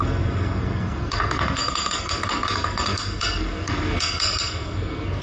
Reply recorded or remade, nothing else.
remade